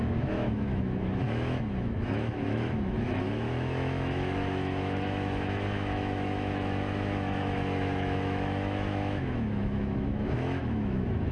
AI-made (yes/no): yes